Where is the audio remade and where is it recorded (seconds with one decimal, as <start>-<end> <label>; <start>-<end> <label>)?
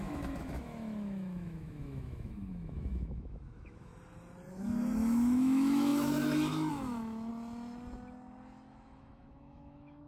0.0-3.9 remade; 3.9-4.5 recorded; 4.5-7.3 remade; 7.3-8.7 recorded; 8.7-10.1 remade